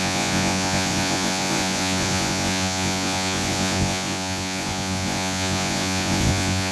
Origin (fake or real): fake